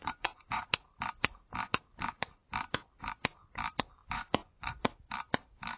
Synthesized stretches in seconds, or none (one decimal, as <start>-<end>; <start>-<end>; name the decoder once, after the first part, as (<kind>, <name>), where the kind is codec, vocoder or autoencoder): 0.0-0.7 (vocoder, Vocos); 4.0-5.1